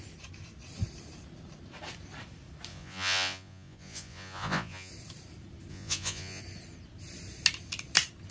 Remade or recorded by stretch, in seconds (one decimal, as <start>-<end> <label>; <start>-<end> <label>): 0.0-2.7 recorded; 2.7-4.9 remade; 4.9-5.7 recorded; 5.7-6.4 remade; 6.4-8.3 recorded

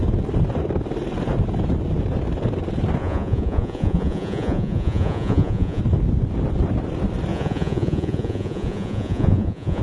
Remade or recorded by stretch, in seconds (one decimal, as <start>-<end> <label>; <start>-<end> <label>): 0.0-3.0 recorded; 3.0-5.8 remade; 5.8-7.3 recorded; 7.3-9.8 remade